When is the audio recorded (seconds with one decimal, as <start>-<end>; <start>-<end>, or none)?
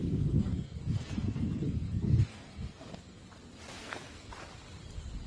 3.2-3.8; 4.3-5.3